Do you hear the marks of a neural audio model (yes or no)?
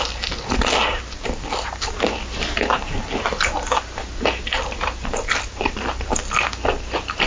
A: no